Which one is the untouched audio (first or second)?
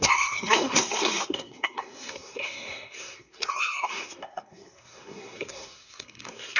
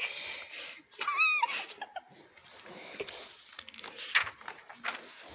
second